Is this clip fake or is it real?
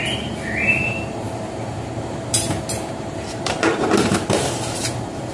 fake